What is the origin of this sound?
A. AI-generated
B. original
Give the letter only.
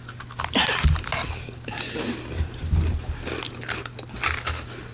B